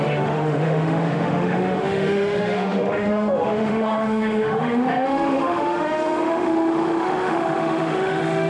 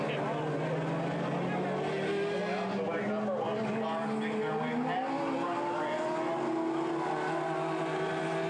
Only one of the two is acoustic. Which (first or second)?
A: second